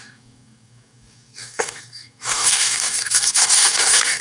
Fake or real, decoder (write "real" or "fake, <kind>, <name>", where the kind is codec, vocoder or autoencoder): fake, codec, DAC